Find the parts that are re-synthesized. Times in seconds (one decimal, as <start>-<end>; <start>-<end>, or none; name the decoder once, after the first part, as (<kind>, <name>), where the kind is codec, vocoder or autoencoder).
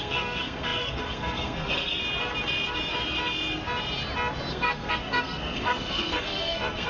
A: 0.0-2.0 (codec, SNAC); 4.5-6.9